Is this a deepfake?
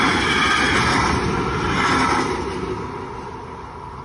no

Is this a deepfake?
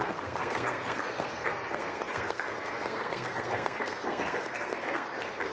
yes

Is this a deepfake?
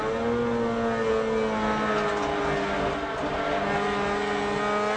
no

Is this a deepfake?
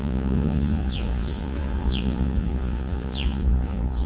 yes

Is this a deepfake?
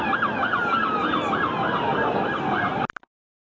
no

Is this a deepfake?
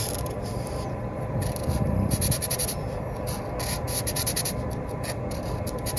yes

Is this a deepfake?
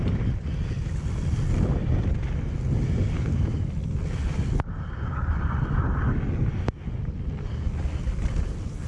no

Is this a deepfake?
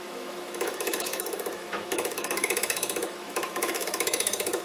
yes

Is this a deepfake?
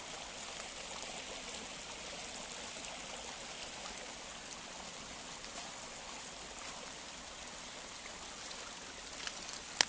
no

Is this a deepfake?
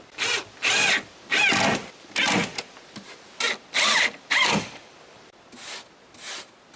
no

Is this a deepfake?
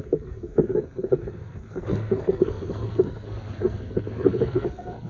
yes